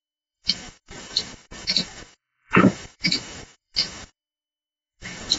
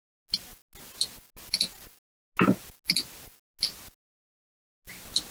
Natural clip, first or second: second